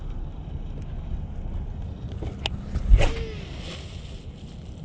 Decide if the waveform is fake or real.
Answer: real